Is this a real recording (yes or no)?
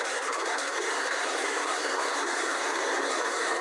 no